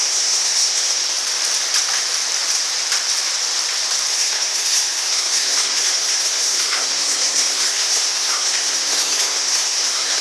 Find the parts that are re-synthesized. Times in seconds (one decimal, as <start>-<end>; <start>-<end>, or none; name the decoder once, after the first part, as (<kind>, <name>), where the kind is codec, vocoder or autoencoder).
0.0-1.0 (codec, SNAC); 4.1-10.2